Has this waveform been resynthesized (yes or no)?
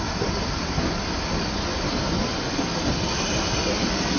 no